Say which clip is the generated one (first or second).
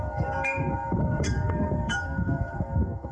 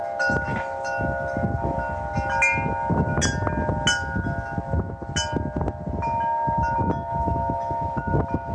first